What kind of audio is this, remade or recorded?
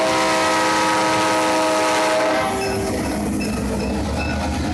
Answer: recorded